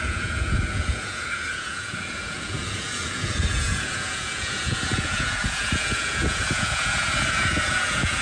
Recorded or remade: remade